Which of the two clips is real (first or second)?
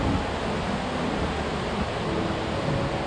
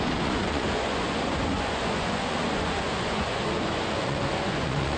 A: first